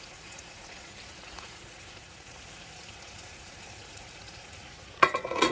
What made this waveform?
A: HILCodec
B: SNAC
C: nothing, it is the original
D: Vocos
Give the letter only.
D